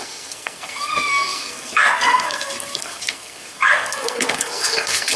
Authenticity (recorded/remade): remade